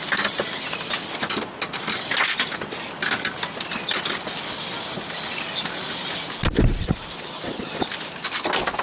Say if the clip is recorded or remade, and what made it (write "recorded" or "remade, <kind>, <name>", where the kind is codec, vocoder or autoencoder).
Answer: recorded